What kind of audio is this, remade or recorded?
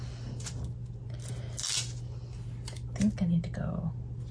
recorded